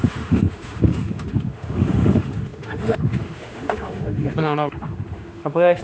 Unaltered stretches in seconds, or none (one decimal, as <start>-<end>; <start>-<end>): none